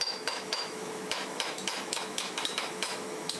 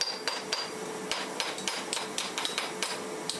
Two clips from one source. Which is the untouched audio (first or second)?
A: second